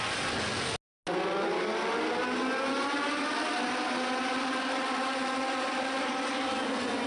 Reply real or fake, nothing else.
real